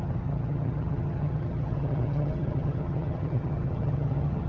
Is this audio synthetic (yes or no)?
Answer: yes